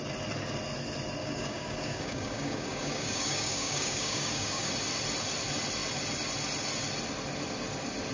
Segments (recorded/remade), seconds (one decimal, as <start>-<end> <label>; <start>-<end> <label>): 0.0-1.2 recorded; 1.2-4.7 remade; 4.7-8.1 recorded